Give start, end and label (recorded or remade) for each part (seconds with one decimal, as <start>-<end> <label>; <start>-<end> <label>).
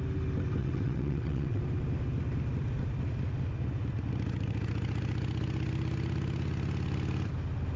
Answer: 0.0-0.6 recorded; 0.6-1.6 remade; 1.6-7.8 recorded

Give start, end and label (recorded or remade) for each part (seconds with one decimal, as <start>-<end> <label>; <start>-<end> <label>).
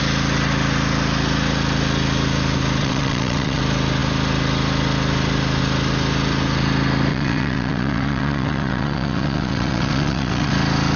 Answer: 0.0-2.8 recorded; 2.8-3.6 remade; 3.6-7.1 recorded; 7.1-10.5 remade; 10.5-11.0 recorded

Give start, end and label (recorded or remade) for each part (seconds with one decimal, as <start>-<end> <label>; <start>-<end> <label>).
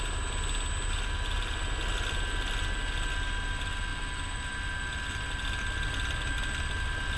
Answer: 0.0-7.2 recorded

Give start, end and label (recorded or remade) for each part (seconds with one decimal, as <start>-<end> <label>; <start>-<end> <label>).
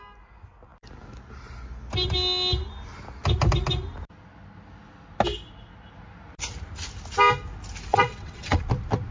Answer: 0.0-7.9 recorded; 7.9-8.6 remade; 8.6-9.1 recorded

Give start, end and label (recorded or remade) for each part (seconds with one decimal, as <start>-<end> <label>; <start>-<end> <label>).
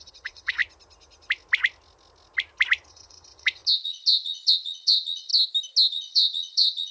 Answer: 0.0-0.6 remade; 0.6-2.9 recorded; 2.9-5.3 remade; 5.3-5.9 recorded; 5.9-6.9 remade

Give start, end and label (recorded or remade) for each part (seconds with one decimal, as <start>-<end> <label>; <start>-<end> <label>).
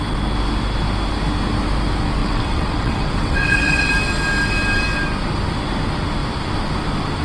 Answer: 0.0-2.2 recorded; 2.2-3.9 remade; 3.9-7.2 recorded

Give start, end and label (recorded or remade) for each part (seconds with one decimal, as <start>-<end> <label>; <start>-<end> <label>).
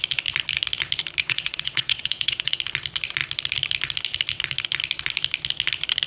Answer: 0.0-1.2 recorded; 1.2-2.6 remade; 2.6-6.1 recorded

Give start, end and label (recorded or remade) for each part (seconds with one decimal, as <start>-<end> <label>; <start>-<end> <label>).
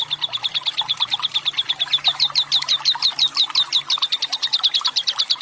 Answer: 0.0-5.4 recorded